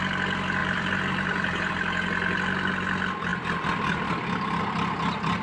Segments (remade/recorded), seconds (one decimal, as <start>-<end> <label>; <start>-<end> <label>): 0.0-0.6 recorded; 0.6-1.7 remade; 1.7-5.4 recorded